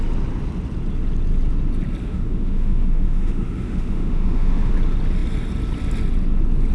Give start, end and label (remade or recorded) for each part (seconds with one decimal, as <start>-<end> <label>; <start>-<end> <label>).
0.0-2.0 recorded; 2.0-4.7 remade; 4.7-6.7 recorded